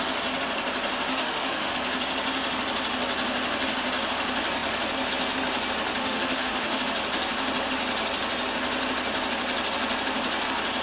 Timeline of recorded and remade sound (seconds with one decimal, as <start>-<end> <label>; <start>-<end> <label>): 0.0-1.1 recorded; 1.1-1.7 remade; 1.7-6.0 recorded; 6.0-6.8 remade; 6.8-10.8 recorded